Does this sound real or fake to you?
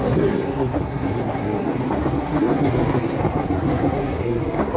fake